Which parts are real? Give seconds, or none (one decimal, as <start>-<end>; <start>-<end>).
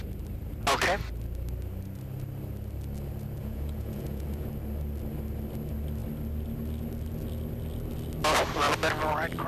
0.0-3.4; 4.5-9.5